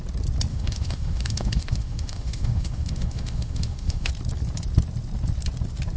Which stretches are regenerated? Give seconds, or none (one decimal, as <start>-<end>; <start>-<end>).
0.5-4.1